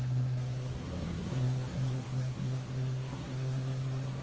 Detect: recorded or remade remade